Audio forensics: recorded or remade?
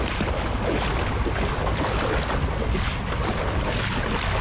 recorded